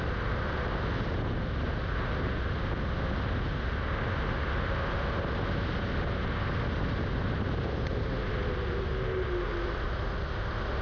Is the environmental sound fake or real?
real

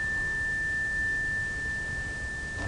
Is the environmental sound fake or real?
real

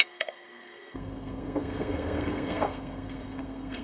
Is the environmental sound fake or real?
fake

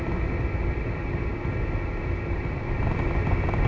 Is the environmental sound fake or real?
real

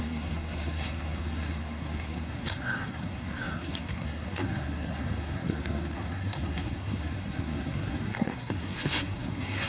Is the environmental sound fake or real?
fake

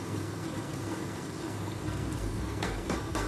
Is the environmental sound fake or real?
fake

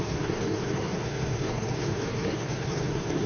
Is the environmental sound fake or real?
fake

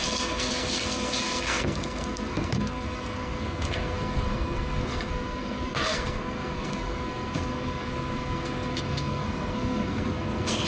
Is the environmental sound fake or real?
fake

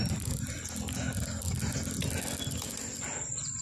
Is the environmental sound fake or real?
real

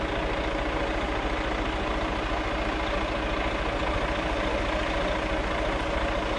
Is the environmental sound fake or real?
real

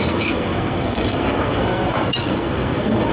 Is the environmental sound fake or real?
fake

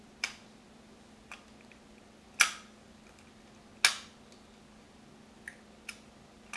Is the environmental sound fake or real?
real